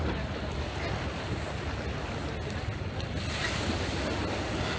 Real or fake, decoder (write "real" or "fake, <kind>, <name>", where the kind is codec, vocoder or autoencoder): real